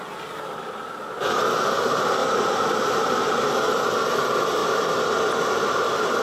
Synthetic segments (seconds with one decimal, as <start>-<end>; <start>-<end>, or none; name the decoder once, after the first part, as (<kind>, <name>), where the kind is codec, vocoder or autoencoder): 2.2-3.6 (vocoder, BigVGAN v2)